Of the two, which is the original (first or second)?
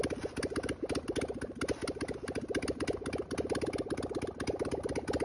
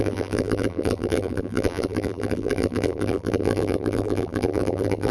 first